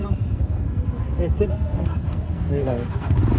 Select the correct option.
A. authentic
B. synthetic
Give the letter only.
B